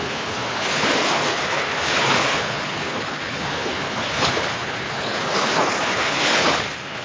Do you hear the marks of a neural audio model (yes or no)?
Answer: yes